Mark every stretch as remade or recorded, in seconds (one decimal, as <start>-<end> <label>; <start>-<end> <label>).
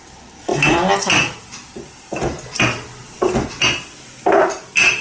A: 0.0-5.0 recorded